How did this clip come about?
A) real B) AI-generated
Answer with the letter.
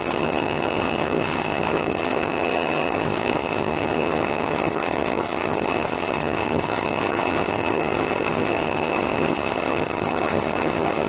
B